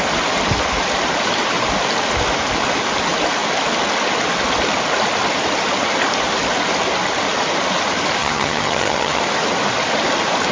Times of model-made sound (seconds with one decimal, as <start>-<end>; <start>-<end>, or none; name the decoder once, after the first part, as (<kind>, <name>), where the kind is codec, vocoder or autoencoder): 8.2-9.2 (vocoder, HiFi-GAN)